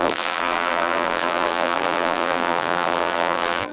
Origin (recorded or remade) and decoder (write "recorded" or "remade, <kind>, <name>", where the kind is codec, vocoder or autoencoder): remade, vocoder, BigVGAN v2